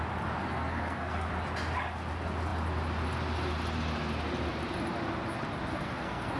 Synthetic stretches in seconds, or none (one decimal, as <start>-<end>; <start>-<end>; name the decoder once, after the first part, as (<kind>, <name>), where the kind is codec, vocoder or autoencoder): 0.4-1.3 (codec, SNAC); 5.7-6.4